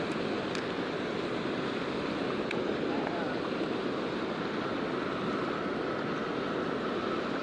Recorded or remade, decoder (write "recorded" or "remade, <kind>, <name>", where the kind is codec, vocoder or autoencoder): recorded